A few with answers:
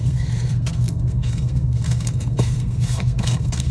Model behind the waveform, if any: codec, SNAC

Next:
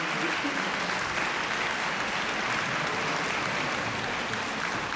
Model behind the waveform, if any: none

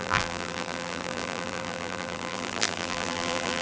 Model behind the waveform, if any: vocoder, BigVGAN v2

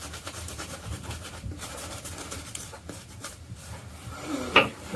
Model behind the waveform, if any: vocoder, BigVGAN v2